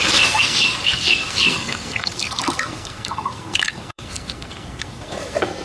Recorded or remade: remade